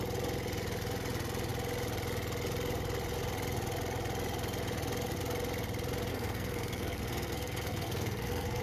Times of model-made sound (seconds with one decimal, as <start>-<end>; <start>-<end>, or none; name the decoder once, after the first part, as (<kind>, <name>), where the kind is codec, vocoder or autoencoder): 6.1-8.6 (codec, SNAC)